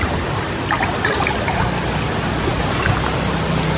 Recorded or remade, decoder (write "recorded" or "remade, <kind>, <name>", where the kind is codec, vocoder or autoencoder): recorded